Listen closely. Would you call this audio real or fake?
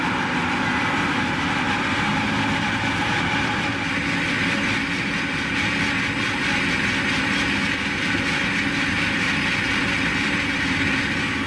real